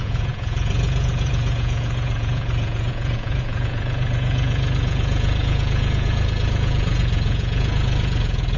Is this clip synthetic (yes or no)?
yes